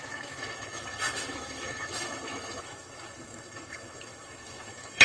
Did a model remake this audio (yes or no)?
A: yes